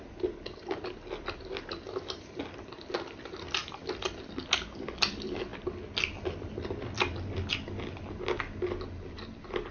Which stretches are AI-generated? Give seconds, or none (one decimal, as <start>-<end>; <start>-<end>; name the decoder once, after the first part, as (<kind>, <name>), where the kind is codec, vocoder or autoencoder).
none